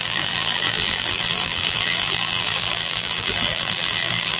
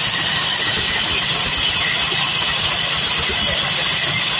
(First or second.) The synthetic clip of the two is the first